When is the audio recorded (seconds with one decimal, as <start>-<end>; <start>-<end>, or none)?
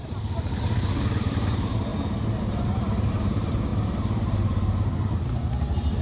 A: 1.9-2.4